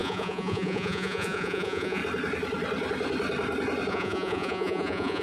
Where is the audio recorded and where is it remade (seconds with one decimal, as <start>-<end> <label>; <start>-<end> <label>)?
0.0-2.0 remade; 2.0-3.9 recorded; 3.9-5.2 remade